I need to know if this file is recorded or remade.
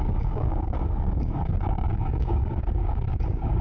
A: remade